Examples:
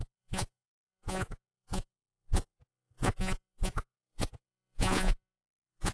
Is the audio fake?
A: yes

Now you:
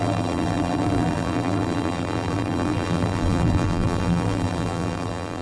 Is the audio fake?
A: yes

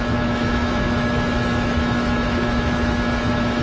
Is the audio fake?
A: yes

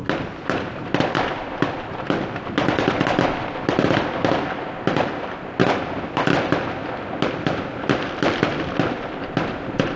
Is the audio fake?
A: no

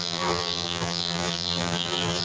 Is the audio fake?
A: yes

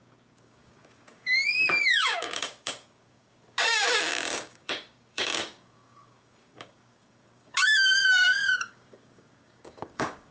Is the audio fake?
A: yes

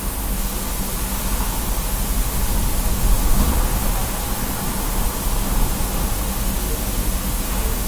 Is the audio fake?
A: no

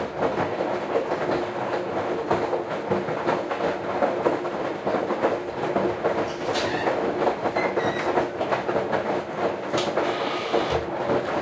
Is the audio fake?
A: no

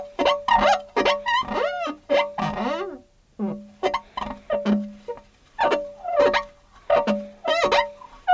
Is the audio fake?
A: no